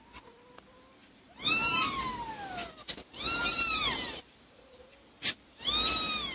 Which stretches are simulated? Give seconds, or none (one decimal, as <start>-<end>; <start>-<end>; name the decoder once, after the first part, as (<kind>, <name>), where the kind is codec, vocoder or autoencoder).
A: 1.0-2.3 (vocoder, BigVGAN v2); 3.5-4.8